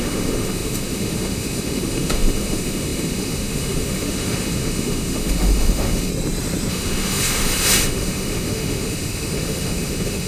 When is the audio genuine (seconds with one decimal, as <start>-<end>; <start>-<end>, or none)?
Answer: 6.1-6.7